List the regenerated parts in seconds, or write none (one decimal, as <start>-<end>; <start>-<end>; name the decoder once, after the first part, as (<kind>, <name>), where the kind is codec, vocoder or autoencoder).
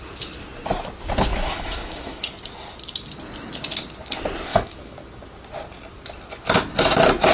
1.3-2.2 (autoencoder, DAC-VAE); 4.5-5.0